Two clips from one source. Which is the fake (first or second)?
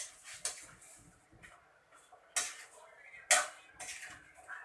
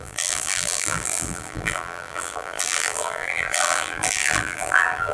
second